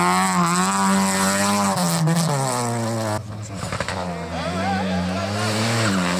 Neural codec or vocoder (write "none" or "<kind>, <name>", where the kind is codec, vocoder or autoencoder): none